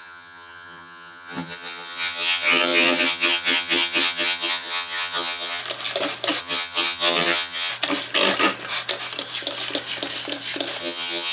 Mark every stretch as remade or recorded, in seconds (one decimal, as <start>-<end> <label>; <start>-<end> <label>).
0.0-5.6 remade; 5.6-6.4 recorded; 6.4-7.7 remade; 7.7-10.8 recorded; 10.8-11.3 remade